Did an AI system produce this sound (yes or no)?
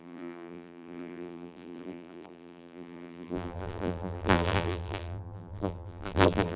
yes